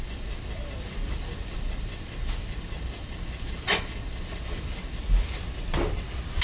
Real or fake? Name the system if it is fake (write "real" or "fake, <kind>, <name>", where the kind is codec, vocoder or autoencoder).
real